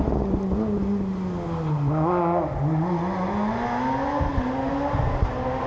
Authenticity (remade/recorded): recorded